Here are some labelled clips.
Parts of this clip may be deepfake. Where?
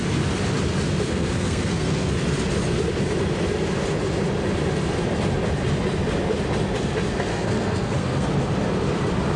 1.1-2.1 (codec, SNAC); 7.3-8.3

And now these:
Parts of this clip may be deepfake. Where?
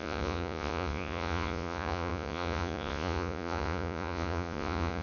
0.0-5.0 (vocoder, Vocos)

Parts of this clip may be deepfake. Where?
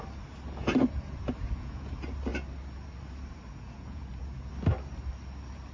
0.6-1.9 (vocoder, Vocos); 3.5-4.5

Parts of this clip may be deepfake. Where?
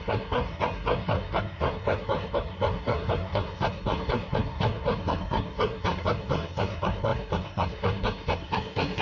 0.0-9.0 (codec, SNAC)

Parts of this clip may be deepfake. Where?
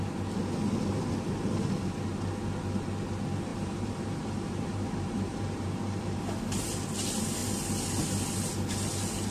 3.5-6.2 (vocoder, BigVGAN v2)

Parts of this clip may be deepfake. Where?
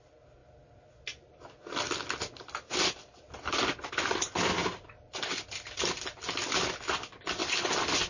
none